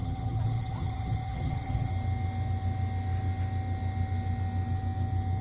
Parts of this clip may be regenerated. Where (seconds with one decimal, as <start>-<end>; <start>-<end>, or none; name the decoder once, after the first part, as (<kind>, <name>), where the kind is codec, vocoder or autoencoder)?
0.0-1.9 (vocoder, HiFi-GAN)